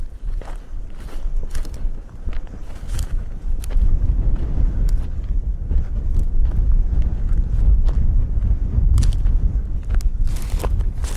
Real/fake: real